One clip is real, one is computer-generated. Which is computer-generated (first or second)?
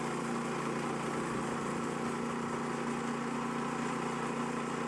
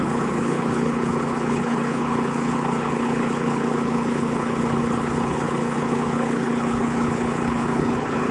second